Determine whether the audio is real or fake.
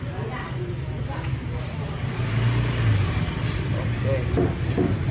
real